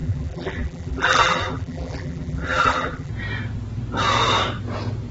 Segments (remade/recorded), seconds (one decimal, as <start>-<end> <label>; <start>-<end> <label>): 0.0-3.1 remade; 3.1-5.1 recorded